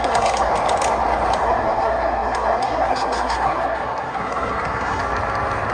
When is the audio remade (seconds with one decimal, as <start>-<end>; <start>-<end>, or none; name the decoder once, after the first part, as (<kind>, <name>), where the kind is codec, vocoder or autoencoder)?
0.0-0.5 (codec, SNAC); 1.4-5.0